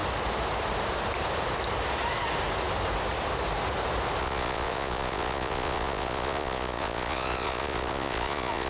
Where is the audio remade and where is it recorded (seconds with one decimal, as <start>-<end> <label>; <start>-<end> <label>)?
0.0-4.2 recorded; 4.2-8.7 remade